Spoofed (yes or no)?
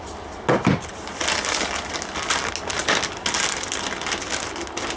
no